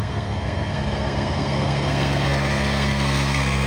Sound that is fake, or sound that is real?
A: fake